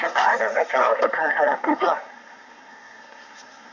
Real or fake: fake